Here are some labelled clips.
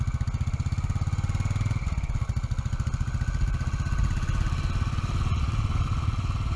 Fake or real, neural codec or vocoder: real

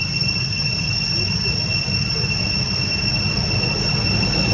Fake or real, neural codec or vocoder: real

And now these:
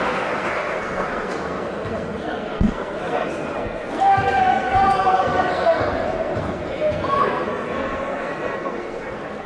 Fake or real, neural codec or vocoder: fake, codec, SNAC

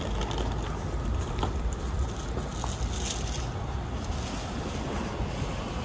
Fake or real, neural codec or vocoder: real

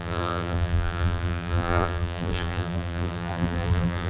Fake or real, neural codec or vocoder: fake, vocoder, BigVGAN v2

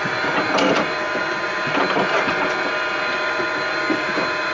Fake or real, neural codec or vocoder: real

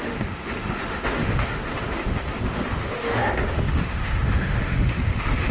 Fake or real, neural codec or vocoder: fake, autoencoder, DAC-VAE